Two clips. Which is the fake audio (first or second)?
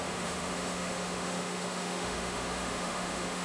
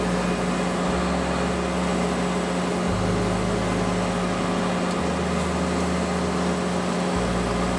first